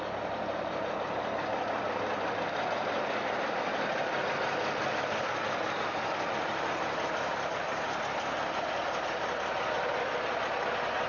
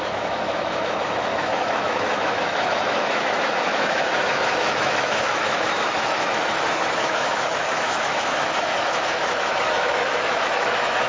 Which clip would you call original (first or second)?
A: first